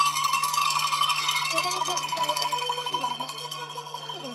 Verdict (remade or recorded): remade